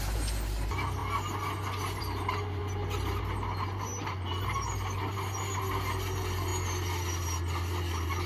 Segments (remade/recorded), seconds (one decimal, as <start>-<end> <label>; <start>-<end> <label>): 0.0-8.3 recorded